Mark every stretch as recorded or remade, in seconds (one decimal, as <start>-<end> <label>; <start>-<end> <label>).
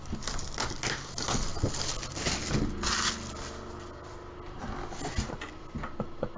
0.0-6.4 recorded